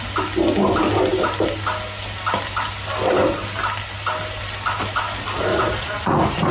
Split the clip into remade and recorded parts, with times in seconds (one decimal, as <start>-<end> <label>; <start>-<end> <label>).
0.0-5.5 recorded; 5.5-6.5 remade